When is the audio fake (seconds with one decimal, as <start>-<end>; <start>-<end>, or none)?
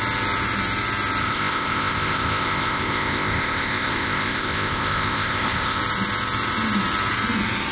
1.2-5.8